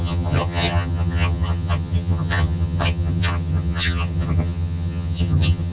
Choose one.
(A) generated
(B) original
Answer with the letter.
A